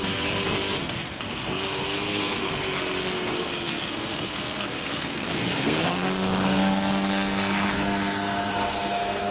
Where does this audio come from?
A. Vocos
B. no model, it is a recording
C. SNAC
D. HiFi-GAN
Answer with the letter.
C